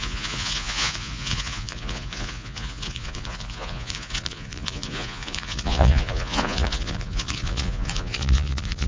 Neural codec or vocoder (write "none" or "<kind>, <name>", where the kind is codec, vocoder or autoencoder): vocoder, Vocos